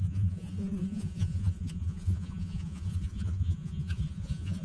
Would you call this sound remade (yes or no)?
yes